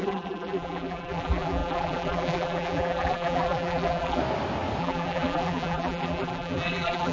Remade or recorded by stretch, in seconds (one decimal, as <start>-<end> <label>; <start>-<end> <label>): 0.0-4.2 remade; 4.2-4.8 recorded; 4.8-7.1 remade